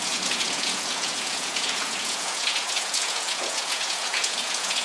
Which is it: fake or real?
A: fake